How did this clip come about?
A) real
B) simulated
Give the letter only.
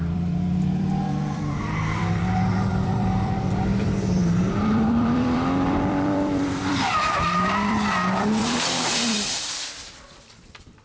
B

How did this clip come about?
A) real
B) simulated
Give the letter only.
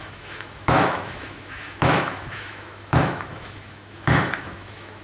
B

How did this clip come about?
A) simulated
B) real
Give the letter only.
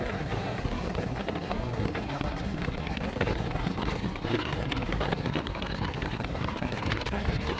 A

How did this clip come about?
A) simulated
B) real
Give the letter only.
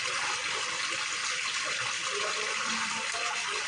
B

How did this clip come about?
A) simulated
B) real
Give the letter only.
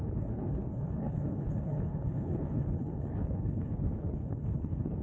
A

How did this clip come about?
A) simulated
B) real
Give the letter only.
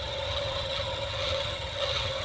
A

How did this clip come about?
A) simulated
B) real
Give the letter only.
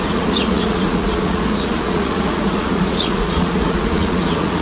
A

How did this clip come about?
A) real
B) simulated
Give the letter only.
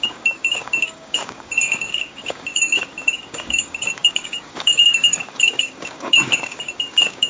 B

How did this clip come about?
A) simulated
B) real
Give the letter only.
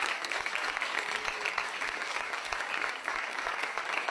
A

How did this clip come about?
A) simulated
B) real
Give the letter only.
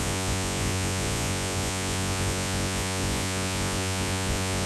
A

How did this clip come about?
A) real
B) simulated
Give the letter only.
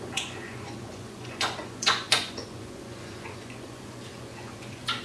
B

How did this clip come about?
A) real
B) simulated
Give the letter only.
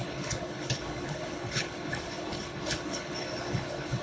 B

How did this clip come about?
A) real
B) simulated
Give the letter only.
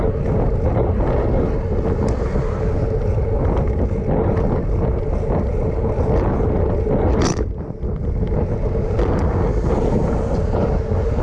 A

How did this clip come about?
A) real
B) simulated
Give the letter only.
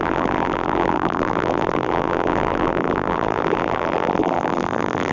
B